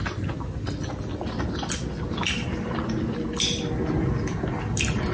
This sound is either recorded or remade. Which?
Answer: recorded